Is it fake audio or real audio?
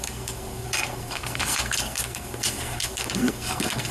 fake